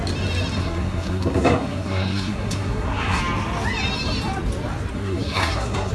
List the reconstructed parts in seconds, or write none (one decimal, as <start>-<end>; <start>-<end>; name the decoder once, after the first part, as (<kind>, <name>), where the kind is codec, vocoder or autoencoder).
0.6-3.2 (codec, SNAC); 4.9-5.9